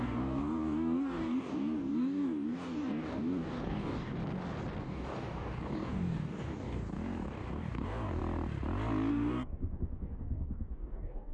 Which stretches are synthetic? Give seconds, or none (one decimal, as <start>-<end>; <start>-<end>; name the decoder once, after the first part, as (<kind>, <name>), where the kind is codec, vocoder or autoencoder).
0.0-4.2 (codec, DAC); 4.8-8.2; 9.1-11.3